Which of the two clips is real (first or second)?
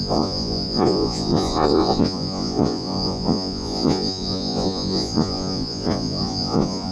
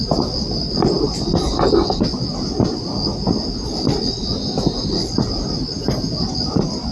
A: second